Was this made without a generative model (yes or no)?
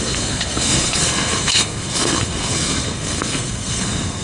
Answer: no